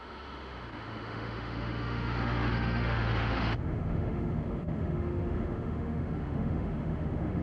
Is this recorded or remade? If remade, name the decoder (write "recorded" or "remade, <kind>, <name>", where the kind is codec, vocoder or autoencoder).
remade, autoencoder, DAC-VAE